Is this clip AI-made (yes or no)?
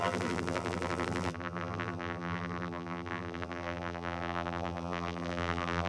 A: yes